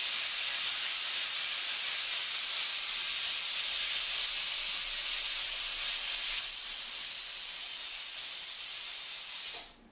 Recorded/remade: recorded